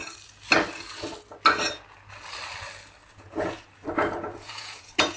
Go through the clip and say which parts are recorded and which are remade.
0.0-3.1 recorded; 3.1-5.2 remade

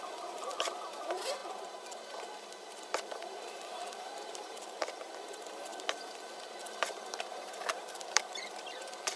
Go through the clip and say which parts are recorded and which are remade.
0.0-5.7 remade; 5.7-6.5 recorded; 6.5-9.2 remade

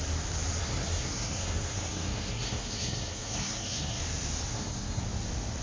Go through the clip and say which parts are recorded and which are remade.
0.0-0.6 recorded; 0.6-4.0 remade; 4.0-4.5 recorded; 4.5-5.0 remade; 5.0-5.6 recorded

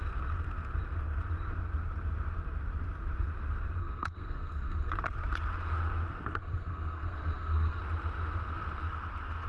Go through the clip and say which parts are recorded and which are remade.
0.0-3.8 recorded; 3.8-4.9 remade; 4.9-6.4 recorded; 6.4-7.8 remade; 7.8-9.5 recorded

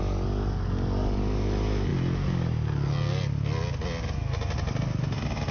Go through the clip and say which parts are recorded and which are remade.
0.0-5.5 recorded

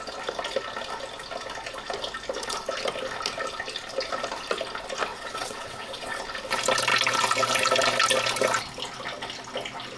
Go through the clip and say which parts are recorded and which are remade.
0.0-5.1 recorded; 5.1-6.2 remade; 6.2-10.0 recorded

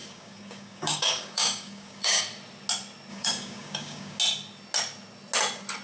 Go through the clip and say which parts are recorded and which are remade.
0.0-2.2 remade; 2.2-3.1 recorded; 3.1-4.2 remade; 4.2-5.8 recorded

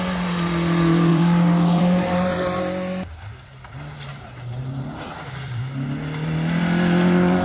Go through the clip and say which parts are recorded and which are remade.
0.0-1.1 recorded; 1.1-2.6 remade; 2.6-4.1 recorded; 4.1-5.6 remade; 5.6-7.4 recorded